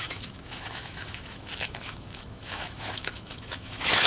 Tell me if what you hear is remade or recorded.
remade